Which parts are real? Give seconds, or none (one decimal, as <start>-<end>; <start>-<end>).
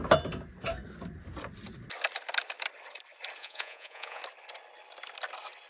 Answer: 0.0-3.4; 4.2-5.7